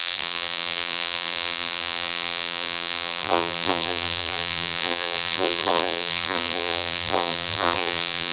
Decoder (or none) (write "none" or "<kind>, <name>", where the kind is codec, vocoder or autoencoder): vocoder, BigVGAN v2